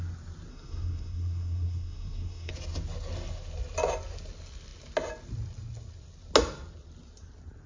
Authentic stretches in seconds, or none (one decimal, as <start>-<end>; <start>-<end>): 0.0-0.5; 2.5-7.7